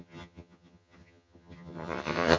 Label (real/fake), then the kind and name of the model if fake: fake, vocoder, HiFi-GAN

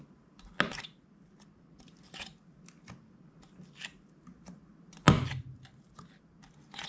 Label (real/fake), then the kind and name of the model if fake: real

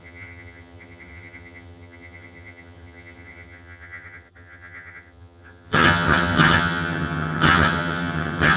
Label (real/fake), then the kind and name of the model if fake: fake, vocoder, HiFi-GAN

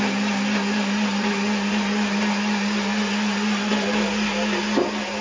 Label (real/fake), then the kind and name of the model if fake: real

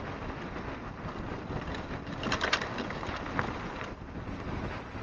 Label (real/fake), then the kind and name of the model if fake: real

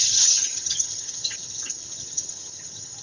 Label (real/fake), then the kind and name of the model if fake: fake, vocoder, HiFi-GAN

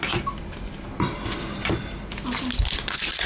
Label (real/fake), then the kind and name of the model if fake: real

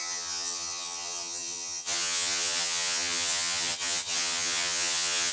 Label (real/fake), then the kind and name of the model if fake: fake, vocoder, HiFi-GAN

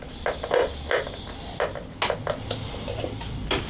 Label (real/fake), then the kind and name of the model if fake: real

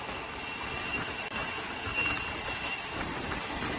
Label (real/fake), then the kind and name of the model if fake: real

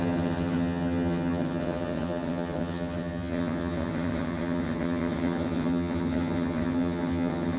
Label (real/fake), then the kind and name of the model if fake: fake, vocoder, HiFi-GAN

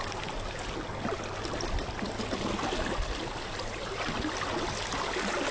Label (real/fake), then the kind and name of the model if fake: real